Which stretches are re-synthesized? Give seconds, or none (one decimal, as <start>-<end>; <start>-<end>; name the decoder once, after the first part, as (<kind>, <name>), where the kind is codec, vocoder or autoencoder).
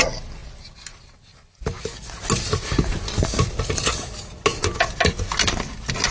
none